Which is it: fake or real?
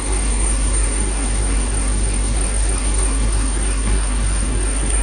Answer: fake